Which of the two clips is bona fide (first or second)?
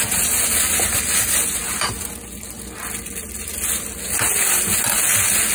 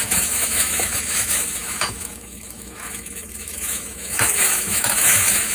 first